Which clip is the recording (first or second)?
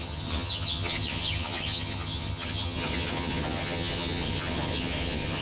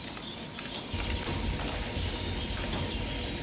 second